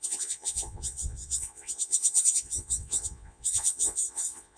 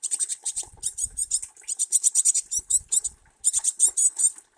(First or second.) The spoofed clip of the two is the first